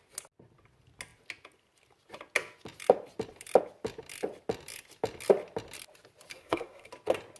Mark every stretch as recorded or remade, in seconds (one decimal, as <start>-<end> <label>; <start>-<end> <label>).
0.0-6.3 recorded; 6.3-6.9 remade; 6.9-7.4 recorded